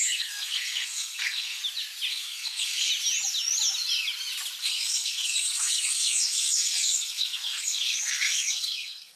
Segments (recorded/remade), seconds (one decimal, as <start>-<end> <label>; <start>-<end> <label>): 0.0-1.6 remade; 1.6-2.1 recorded; 2.1-2.9 remade; 2.9-4.6 recorded; 4.6-9.2 remade